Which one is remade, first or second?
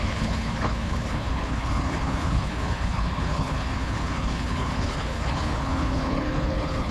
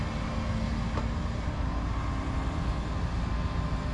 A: first